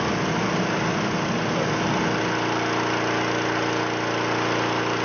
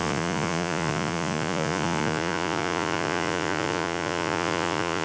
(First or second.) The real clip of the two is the first